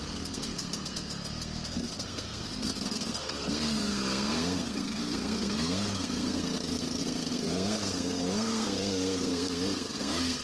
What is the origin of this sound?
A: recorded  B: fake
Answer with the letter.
B